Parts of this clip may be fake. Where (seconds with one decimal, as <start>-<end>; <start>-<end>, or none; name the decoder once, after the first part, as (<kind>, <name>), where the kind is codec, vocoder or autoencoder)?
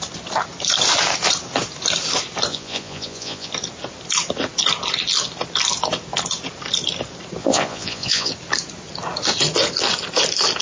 2.5-3.5 (vocoder, Vocos); 7.4-8.3